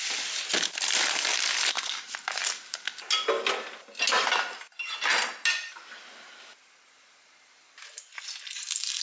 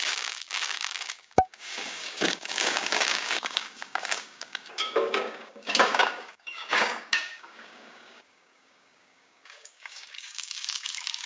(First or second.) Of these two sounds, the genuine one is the first